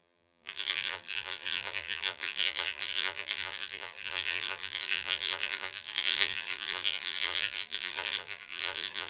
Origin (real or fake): fake